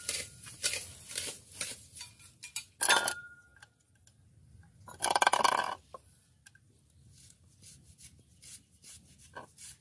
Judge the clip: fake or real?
real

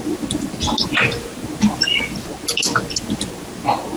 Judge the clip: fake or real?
real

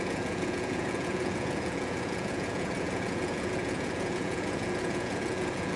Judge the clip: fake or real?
fake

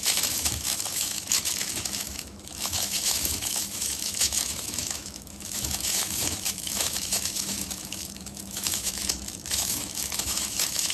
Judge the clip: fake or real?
fake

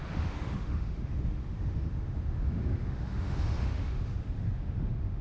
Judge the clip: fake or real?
fake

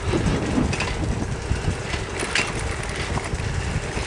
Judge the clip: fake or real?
real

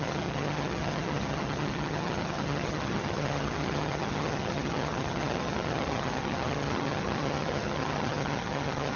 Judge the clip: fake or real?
fake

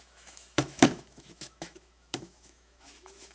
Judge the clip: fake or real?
fake